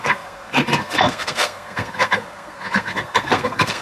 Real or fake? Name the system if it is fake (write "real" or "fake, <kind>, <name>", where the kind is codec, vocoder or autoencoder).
fake, codec, SNAC